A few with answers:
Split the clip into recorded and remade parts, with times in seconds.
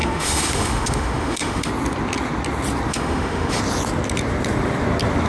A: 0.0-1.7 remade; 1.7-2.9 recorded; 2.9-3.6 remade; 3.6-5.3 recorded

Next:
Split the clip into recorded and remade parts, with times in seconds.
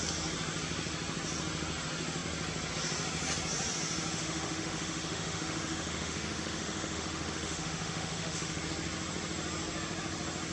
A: 0.0-4.1 recorded; 4.1-8.6 remade; 8.6-10.5 recorded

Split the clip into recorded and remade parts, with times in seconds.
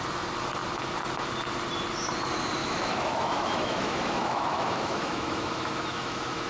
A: 0.0-2.6 recorded; 2.6-6.5 remade